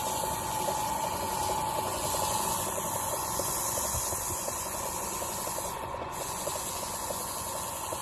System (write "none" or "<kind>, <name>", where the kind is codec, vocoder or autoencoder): vocoder, Vocos